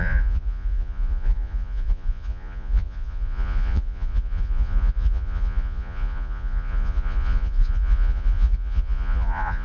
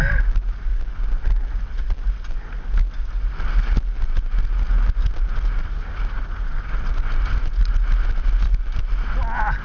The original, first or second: second